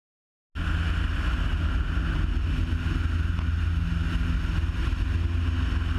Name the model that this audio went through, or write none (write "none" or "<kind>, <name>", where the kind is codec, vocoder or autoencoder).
none